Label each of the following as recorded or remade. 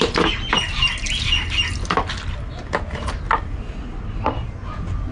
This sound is recorded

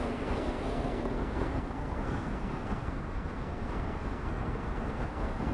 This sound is remade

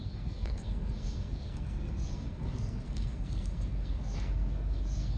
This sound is remade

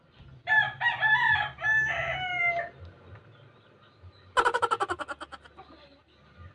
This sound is recorded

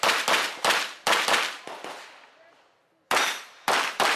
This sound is recorded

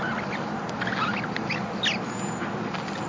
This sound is recorded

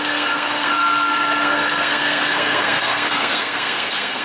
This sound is remade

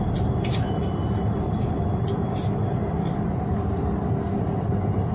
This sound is recorded